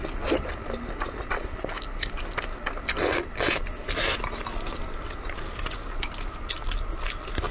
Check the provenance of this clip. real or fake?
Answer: real